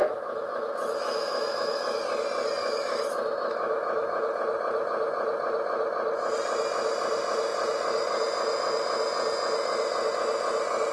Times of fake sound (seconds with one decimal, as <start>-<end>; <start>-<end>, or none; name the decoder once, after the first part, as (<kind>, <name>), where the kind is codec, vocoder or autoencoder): 0.0-2.0 (autoencoder, DAC-VAE); 2.6-4.4